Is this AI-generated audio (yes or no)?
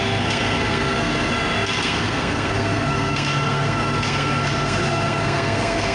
yes